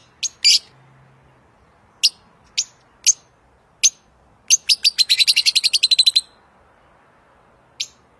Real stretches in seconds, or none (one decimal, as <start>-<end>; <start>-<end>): 0.0-8.2